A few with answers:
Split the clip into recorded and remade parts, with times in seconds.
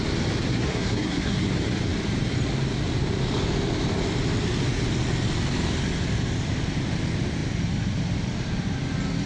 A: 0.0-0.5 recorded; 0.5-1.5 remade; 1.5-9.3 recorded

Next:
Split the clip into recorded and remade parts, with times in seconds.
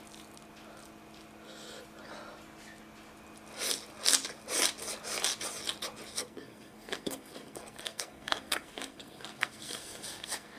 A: 0.0-6.1 recorded; 6.1-10.6 remade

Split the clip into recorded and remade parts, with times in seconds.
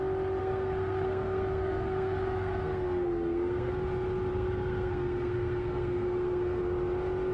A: 0.0-0.4 recorded; 0.4-3.7 remade; 3.7-4.3 recorded; 4.3-6.6 remade; 6.6-7.3 recorded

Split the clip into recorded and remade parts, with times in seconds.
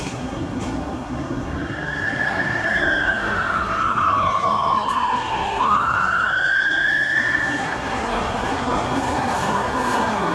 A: 0.0-10.3 remade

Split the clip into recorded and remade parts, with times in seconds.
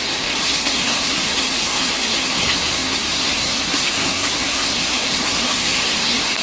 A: 0.0-6.4 remade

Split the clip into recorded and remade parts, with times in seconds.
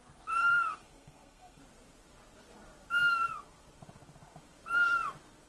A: 0.0-0.5 recorded; 0.5-1.6 remade; 1.6-5.5 recorded